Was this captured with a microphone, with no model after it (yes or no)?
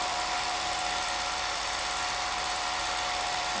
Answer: no